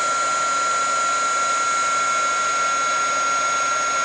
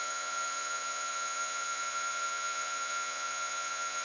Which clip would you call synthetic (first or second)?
second